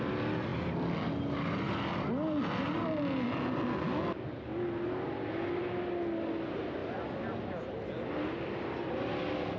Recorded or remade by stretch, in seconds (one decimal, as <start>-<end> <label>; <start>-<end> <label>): 0.0-9.6 recorded